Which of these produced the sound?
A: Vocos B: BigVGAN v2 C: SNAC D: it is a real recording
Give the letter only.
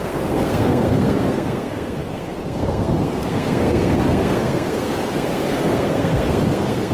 C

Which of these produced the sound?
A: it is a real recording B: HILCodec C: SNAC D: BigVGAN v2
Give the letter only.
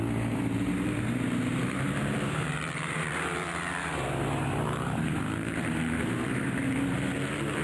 D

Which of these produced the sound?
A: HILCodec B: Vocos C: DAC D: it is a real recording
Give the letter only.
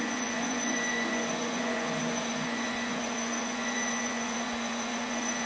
B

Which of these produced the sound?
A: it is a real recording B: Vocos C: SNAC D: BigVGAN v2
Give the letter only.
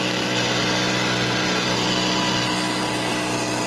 A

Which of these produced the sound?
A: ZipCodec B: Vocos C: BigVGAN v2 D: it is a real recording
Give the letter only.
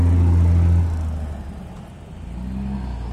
D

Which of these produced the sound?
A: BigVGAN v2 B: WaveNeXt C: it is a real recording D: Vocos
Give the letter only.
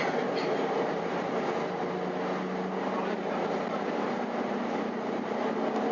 C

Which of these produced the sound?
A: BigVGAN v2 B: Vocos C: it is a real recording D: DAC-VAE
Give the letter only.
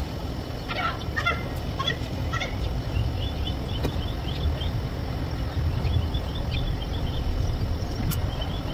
A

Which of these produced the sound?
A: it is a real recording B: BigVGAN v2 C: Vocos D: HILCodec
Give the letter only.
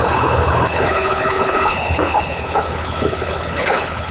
D